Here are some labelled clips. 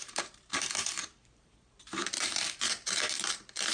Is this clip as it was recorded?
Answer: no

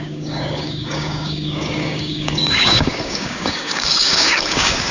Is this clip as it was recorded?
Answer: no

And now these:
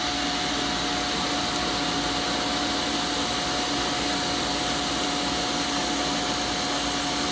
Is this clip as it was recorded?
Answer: yes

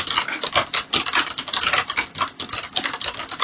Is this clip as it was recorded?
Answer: yes